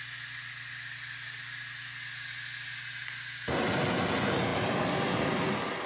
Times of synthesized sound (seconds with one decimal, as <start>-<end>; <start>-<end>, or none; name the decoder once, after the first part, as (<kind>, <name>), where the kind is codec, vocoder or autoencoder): 4.5-5.1 (vocoder, BigVGAN v2)